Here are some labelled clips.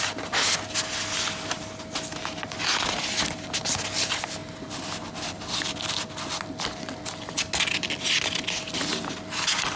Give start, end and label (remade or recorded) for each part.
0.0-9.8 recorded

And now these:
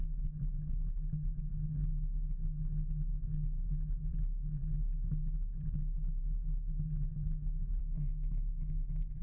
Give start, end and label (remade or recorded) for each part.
0.0-7.8 recorded; 7.8-9.2 remade

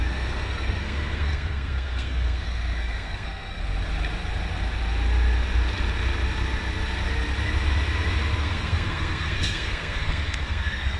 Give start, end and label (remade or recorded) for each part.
0.0-3.6 remade; 3.6-8.4 recorded; 8.4-11.0 remade

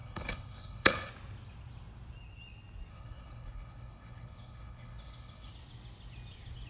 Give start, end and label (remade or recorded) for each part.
0.0-1.1 remade; 1.1-2.9 recorded; 2.9-5.5 remade; 5.5-6.7 recorded

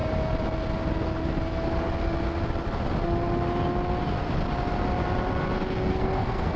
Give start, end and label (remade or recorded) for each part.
0.0-5.9 recorded; 5.9-6.6 remade

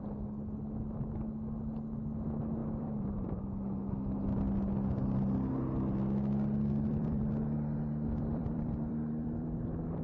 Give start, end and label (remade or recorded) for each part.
0.0-2.6 recorded; 2.6-3.4 remade; 3.4-6.7 recorded; 6.7-10.0 remade